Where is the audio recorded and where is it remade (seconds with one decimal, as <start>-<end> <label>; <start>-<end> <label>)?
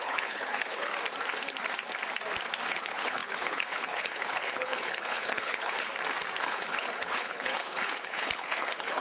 0.0-0.9 remade; 0.9-2.7 recorded; 2.7-5.9 remade; 5.9-6.4 recorded; 6.4-9.0 remade